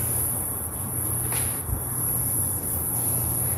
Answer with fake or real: fake